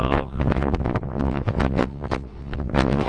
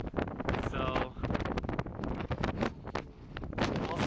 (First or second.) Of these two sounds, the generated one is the first